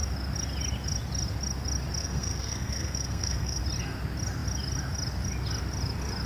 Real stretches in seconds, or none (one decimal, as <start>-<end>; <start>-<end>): 0.0-2.0; 3.6-6.3